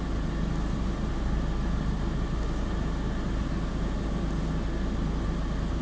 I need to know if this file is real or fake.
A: real